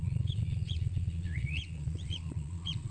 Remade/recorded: remade